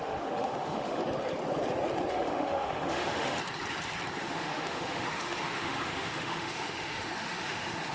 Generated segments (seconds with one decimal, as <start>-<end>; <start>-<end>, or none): 0.0-1.0; 2.1-3.4; 4.2-7.9